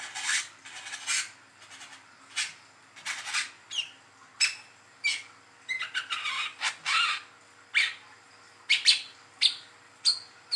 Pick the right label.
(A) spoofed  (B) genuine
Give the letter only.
B